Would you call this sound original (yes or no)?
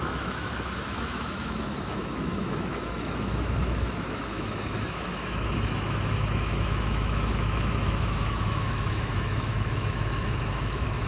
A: no